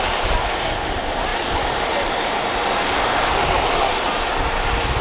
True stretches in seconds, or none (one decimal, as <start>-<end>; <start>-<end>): 0.0-5.0